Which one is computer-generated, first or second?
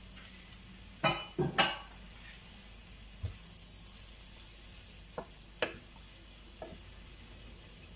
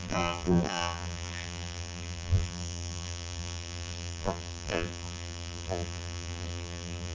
second